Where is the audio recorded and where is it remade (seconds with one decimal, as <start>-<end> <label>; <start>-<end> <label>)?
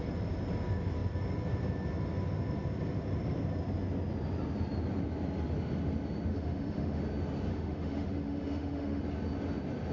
0.0-6.3 recorded; 6.3-7.0 remade; 7.0-7.5 recorded; 7.5-9.0 remade; 9.0-9.9 recorded